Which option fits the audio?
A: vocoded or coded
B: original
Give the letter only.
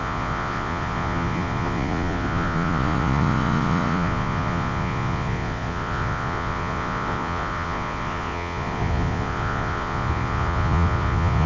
A